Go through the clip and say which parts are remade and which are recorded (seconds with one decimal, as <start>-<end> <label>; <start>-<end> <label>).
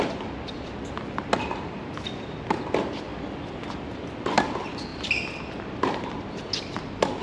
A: 0.0-7.2 recorded